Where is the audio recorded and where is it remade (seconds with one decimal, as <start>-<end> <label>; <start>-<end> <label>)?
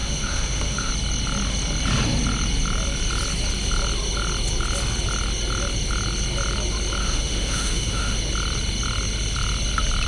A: 0.0-0.9 remade; 0.9-7.0 recorded; 7.0-8.2 remade; 8.2-10.1 recorded